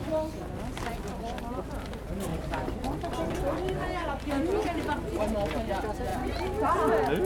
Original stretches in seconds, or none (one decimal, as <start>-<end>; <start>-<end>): 0.0-2.3; 3.4-4.6; 5.2-7.2